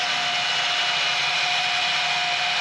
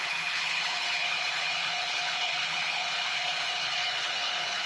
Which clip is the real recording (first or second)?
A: first